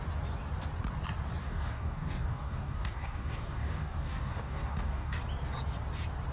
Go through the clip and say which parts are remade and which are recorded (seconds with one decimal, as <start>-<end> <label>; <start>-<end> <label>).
0.0-1.4 recorded; 1.4-5.2 remade; 5.2-6.3 recorded